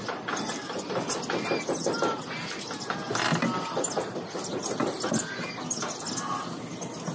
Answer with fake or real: real